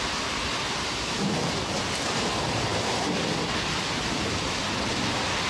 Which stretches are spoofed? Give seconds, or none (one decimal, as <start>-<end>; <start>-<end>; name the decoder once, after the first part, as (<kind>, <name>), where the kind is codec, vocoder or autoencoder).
none